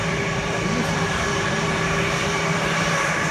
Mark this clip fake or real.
fake